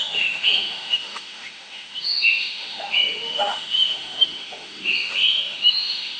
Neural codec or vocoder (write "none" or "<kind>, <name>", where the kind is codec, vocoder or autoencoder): autoencoder, DAC-VAE